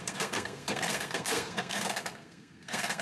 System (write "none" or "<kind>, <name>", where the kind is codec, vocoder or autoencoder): codec, SNAC